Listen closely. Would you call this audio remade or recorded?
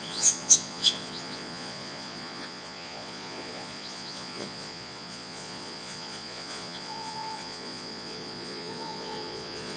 remade